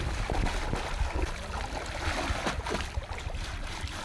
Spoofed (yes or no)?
no